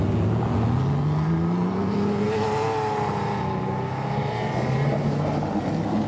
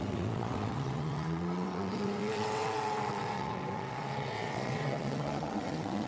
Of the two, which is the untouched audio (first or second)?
first